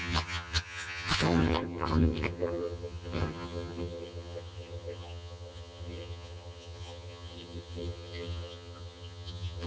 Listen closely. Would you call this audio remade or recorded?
remade